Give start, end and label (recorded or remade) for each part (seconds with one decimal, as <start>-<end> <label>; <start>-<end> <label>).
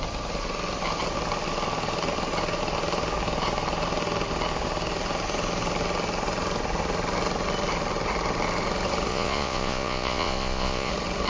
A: 0.0-9.1 recorded; 9.1-10.9 remade; 10.9-11.3 recorded